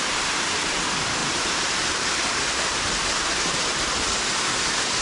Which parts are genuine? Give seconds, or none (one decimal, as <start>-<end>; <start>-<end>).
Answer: 0.0-1.2; 4.2-5.0

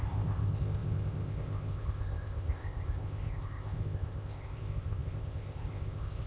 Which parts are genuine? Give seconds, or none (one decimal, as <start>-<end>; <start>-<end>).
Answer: none

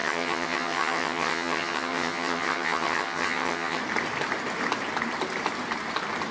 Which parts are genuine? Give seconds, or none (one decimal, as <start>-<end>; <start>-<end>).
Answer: 3.8-6.3

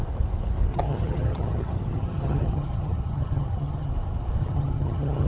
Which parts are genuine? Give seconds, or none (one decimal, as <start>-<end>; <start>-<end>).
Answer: 0.0-0.7; 3.9-4.4

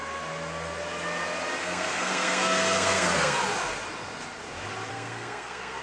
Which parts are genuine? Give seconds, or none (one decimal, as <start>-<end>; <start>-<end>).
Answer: 0.0-1.6; 3.4-4.9